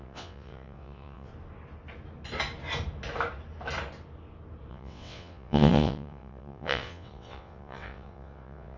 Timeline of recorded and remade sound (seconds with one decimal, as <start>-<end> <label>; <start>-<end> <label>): 0.0-1.3 remade; 1.3-4.7 recorded; 4.7-8.8 remade